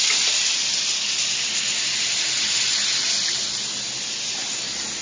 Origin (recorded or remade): recorded